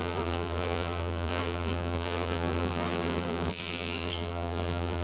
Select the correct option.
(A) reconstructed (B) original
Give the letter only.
A